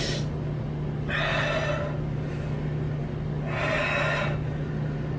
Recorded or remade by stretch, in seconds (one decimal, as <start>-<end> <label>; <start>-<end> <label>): 0.0-5.2 recorded